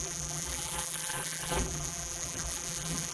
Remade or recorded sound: remade